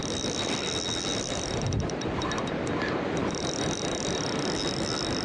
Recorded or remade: recorded